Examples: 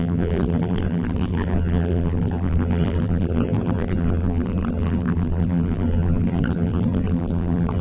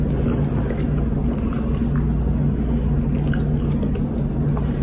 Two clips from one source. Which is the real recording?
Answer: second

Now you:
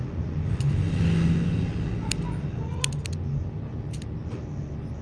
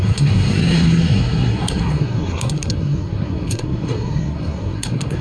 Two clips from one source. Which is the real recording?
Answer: first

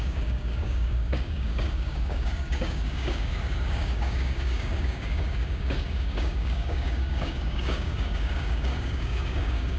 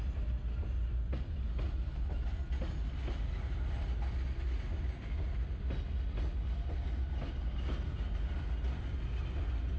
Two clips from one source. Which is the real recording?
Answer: second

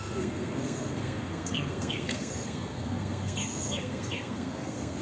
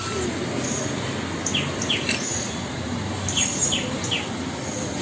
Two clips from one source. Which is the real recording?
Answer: second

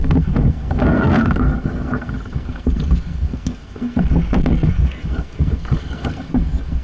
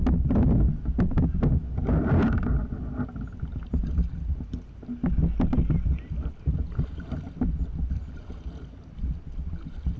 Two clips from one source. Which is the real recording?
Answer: second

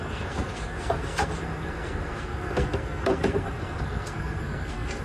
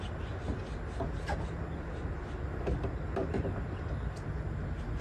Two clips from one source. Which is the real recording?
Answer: second